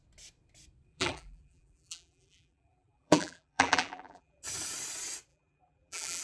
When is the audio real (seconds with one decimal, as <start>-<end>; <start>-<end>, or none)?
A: 0.0-0.9; 4.4-5.3